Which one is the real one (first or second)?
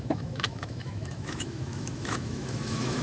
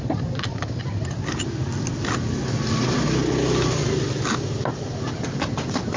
second